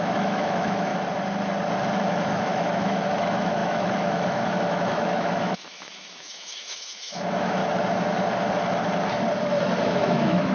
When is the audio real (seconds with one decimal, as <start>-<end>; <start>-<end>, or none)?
0.9-1.9; 7.6-9.8